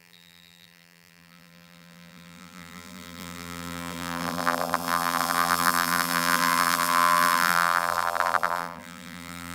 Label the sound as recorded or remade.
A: remade